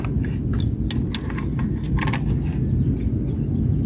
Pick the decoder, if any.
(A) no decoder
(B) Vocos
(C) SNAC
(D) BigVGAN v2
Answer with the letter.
A